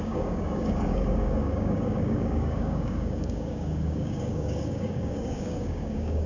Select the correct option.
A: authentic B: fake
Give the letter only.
B